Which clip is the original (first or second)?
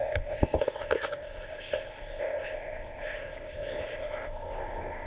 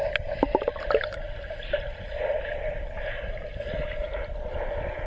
second